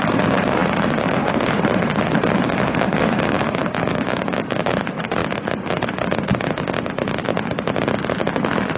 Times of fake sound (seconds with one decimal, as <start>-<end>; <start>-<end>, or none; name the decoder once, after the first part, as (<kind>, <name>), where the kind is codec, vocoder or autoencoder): 3.0-4.7 (codec, DAC)